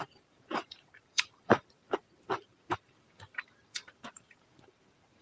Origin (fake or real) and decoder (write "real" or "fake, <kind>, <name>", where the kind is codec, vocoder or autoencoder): fake, vocoder, BigVGAN v2